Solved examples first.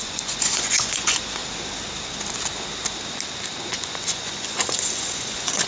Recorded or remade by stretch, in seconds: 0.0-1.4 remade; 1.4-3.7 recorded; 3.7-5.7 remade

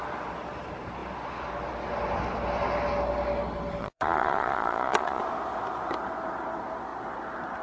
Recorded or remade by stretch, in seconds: 0.0-3.8 recorded; 3.8-5.2 remade; 5.2-7.6 recorded